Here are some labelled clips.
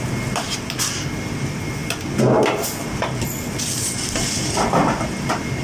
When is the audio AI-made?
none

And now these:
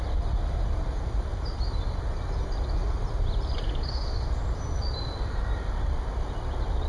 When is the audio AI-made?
none

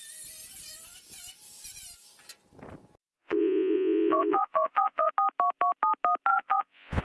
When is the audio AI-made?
3.2-5.1 (vocoder, Vocos); 6.3-7.0

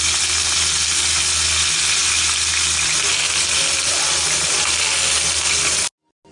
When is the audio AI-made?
none

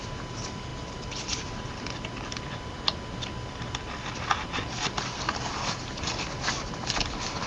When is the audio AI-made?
none

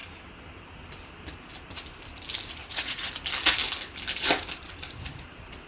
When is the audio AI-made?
2.6-3.1 (vocoder, Vocos)

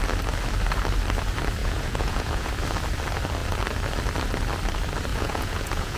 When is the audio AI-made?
1.6-2.5 (vocoder, Vocos); 5.1-6.0